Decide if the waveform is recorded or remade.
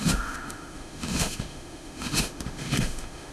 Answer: remade